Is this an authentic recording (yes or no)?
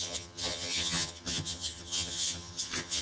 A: no